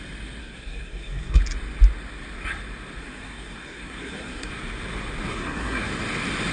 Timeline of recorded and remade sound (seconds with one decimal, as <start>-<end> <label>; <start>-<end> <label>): 0.0-0.4 recorded; 0.4-1.4 remade; 1.4-3.0 recorded; 3.0-4.5 remade; 4.5-5.3 recorded; 5.3-5.9 remade; 5.9-6.5 recorded